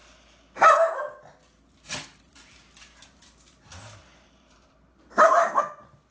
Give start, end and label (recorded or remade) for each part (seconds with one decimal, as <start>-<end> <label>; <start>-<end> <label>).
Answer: 0.0-2.2 recorded; 2.2-6.1 remade